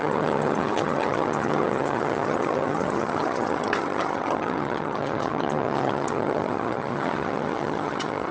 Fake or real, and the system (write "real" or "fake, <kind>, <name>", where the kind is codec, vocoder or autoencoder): fake, vocoder, HiFi-GAN